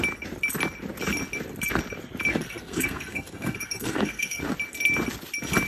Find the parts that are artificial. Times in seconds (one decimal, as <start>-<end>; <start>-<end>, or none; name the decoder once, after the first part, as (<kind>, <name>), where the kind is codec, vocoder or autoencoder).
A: 2.3-4.4 (codec, SNAC)